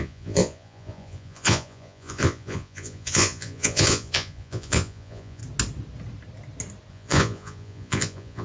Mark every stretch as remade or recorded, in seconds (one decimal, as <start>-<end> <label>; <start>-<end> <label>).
0.0-5.4 remade; 5.4-6.9 recorded; 6.9-8.4 remade